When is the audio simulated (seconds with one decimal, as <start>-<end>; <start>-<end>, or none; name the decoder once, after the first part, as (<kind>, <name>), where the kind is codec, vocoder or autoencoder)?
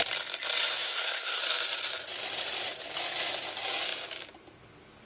0.7-1.4 (codec, SNAC)